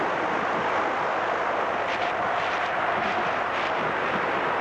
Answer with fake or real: real